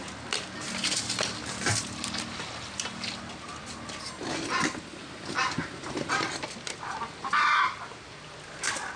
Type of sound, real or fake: real